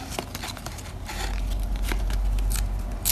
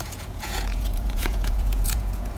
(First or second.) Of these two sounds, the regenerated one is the second